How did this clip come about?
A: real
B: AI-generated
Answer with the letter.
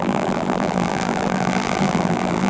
B